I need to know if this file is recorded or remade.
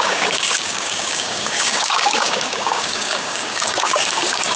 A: remade